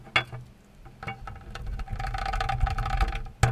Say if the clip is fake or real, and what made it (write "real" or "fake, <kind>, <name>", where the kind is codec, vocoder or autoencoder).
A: real